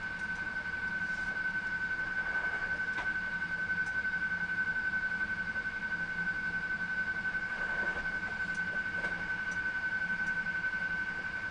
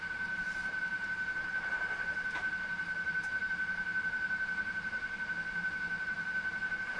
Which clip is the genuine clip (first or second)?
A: first